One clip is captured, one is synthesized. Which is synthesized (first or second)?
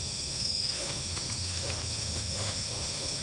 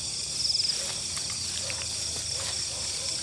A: first